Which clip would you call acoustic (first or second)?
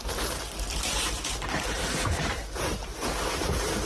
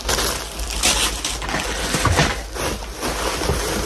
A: second